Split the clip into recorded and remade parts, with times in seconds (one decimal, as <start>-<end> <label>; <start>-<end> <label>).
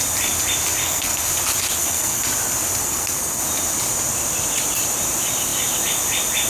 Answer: 0.0-0.8 recorded; 0.8-1.3 remade; 1.3-1.8 recorded; 1.8-2.3 remade; 2.3-2.8 recorded; 2.8-3.4 remade; 3.4-6.5 recorded